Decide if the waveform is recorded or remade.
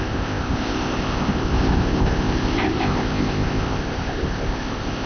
remade